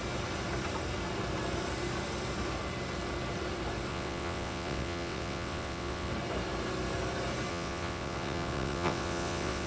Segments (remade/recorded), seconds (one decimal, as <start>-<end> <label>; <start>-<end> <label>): 0.0-3.9 recorded; 3.9-6.1 remade; 6.1-7.5 recorded; 7.5-9.7 remade